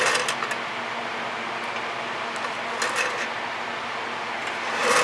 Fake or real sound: real